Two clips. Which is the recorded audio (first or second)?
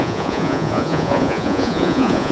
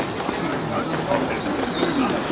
second